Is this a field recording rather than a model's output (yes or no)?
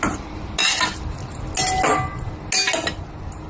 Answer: yes